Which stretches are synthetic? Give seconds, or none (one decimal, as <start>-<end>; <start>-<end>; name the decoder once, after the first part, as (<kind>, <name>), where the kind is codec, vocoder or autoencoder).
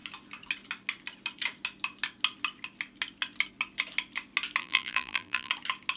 4.6-5.5 (vocoder, BigVGAN v2)